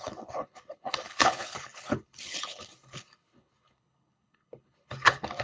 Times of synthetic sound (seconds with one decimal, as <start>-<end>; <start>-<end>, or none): 0.0-5.4